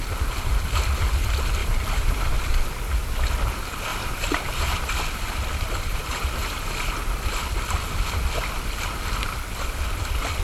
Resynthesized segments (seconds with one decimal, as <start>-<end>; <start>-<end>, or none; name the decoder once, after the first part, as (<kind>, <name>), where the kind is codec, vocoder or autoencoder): 1.6-2.3 (vocoder, BigVGAN v2); 3.9-4.8; 5.9-7.1